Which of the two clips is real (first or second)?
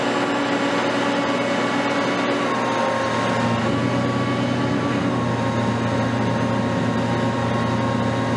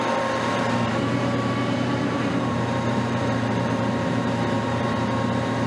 first